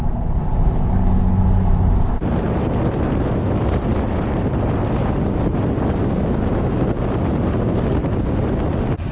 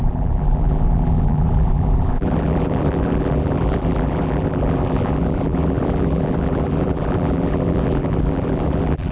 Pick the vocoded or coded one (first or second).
second